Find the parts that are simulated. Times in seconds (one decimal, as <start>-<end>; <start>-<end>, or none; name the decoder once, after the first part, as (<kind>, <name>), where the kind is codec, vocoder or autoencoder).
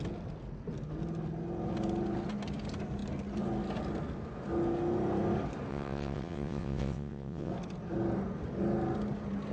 5.7-7.5 (vocoder, WaveNeXt)